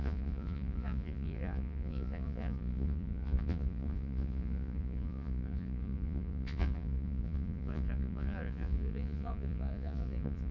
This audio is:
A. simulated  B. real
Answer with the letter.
A